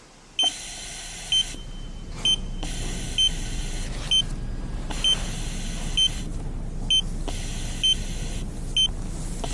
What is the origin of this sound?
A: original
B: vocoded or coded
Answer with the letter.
A